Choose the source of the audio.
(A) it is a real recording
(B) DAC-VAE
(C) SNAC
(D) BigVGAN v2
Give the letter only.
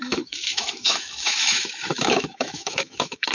B